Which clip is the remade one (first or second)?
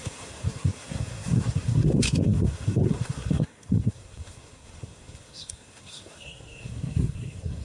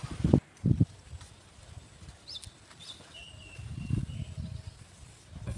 first